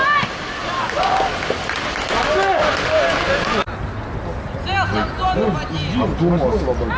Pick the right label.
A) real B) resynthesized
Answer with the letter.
A